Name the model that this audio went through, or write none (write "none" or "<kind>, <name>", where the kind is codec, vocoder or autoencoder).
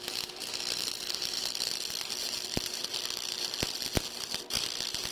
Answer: none